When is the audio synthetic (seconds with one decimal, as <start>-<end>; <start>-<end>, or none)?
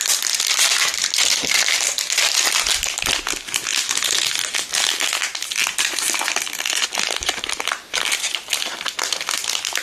none